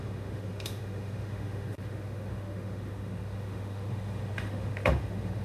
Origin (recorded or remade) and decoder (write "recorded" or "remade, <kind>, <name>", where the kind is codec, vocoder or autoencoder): remade, autoencoder, DAC-VAE